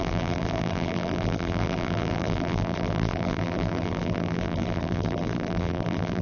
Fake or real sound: fake